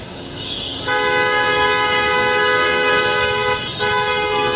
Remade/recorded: remade